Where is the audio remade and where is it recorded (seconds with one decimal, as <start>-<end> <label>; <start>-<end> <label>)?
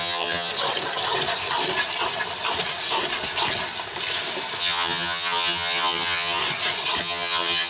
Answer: 0.0-0.5 remade; 0.5-4.6 recorded; 4.6-6.4 remade; 6.4-7.0 recorded; 7.0-7.7 remade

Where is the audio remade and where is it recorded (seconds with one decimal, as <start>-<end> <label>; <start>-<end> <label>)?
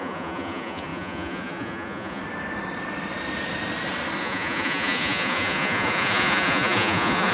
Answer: 0.0-2.2 remade; 2.2-4.2 recorded; 4.2-7.3 remade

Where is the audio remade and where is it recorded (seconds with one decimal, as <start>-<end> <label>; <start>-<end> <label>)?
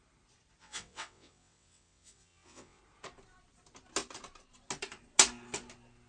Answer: 0.0-0.6 recorded; 0.6-2.8 remade; 2.8-6.1 recorded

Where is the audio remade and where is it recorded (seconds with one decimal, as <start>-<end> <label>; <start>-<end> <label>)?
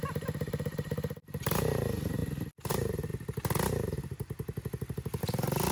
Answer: 0.0-2.2 remade; 2.2-2.7 recorded; 2.7-3.1 remade; 3.1-5.2 recorded; 5.2-5.7 remade